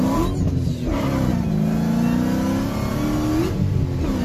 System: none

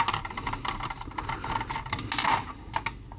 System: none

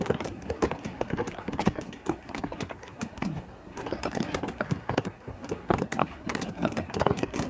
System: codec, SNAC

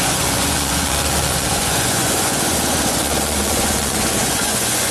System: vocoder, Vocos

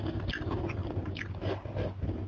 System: none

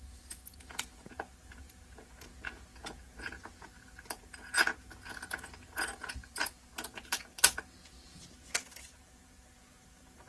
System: vocoder, Vocos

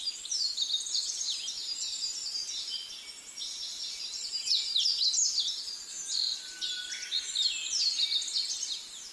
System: none